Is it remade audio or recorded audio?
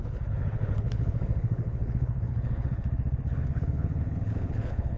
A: remade